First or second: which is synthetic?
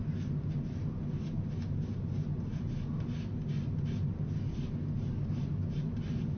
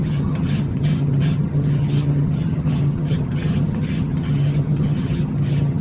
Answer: second